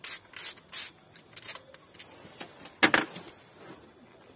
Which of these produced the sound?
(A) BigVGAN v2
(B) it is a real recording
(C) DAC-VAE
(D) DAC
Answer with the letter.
B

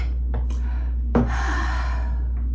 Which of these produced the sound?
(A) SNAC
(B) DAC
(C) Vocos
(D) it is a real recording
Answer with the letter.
D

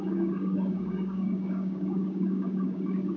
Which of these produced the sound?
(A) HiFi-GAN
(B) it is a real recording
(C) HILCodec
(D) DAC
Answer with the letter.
D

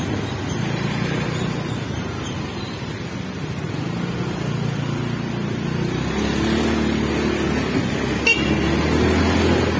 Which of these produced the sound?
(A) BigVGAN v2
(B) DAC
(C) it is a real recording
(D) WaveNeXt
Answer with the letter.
C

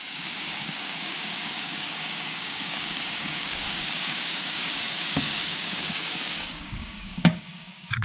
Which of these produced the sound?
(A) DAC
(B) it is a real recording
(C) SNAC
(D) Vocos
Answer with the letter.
A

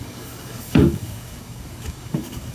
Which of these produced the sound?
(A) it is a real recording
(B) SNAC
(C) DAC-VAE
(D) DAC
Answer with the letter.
D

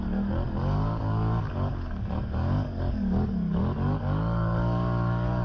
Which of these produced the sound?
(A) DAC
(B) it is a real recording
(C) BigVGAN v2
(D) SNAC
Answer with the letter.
A